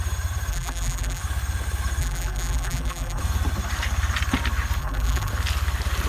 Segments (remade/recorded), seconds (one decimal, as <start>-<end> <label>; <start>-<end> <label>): 0.0-0.5 recorded; 0.5-1.2 remade; 1.2-2.0 recorded; 2.0-3.2 remade; 3.2-4.8 recorded; 4.8-5.3 remade; 5.3-6.1 recorded